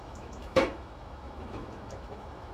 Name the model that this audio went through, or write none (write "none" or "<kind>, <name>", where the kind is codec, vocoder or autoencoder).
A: autoencoder, DAC-VAE